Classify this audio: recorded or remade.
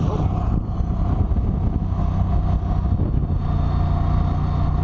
recorded